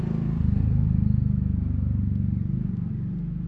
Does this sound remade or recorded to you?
recorded